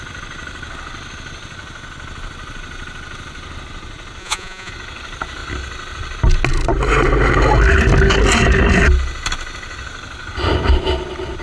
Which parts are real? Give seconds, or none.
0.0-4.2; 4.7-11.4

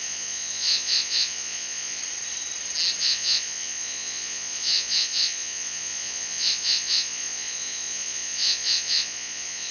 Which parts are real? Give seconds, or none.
2.0-3.0

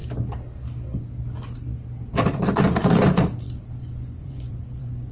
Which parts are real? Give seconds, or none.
0.0-3.8